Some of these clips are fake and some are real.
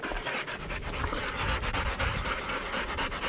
real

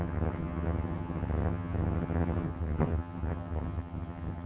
fake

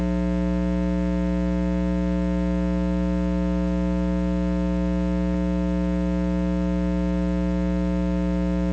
real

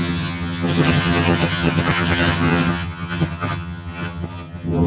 fake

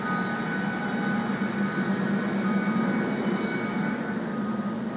real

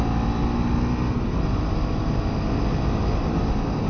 real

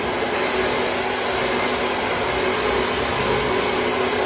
real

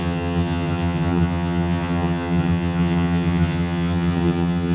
fake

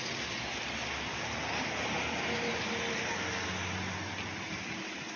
real